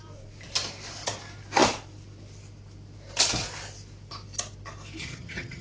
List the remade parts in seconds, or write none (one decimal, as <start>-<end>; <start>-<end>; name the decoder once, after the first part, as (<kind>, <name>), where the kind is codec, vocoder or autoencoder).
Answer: 5.0-5.6 (vocoder, HiFi-GAN)